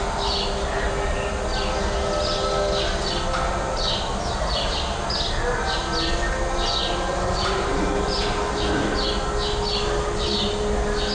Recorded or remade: recorded